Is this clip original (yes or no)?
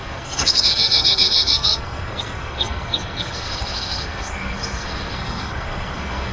no